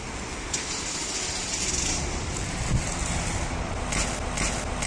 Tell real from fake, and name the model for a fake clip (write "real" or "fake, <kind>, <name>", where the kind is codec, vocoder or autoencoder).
real